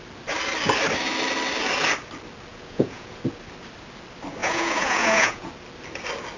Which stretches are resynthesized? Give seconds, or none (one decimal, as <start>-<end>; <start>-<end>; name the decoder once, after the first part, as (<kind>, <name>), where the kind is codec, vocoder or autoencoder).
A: 2.5-3.2 (vocoder, Vocos); 4.4-5.5